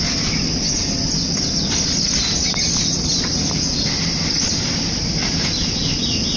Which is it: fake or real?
real